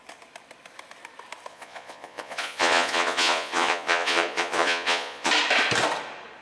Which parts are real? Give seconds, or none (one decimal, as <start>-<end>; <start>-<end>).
0.0-1.5; 5.3-6.4